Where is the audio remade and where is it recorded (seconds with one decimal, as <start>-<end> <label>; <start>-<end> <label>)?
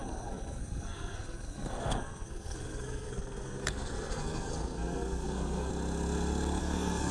0.0-5.7 remade; 5.7-6.6 recorded; 6.6-7.1 remade